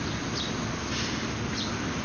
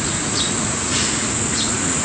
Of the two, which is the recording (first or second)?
first